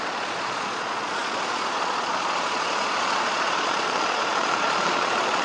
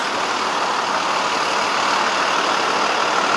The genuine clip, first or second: second